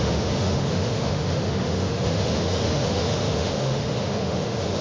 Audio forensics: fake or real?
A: fake